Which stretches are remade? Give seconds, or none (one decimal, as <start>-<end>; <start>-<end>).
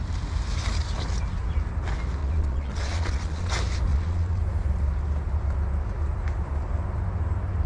2.2-3.5; 3.9-4.4